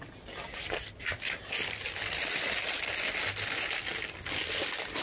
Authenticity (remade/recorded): recorded